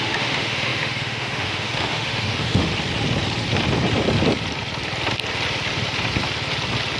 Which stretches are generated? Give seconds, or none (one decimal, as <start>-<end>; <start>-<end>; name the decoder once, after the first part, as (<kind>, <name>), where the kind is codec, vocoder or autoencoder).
0.0-2.7 (autoencoder, DAC-VAE)